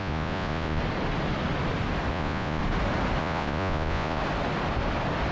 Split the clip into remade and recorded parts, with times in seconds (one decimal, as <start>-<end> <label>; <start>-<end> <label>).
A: 0.0-0.8 remade; 0.8-2.1 recorded; 2.1-2.6 remade; 2.6-3.2 recorded; 3.2-4.2 remade; 4.2-5.3 recorded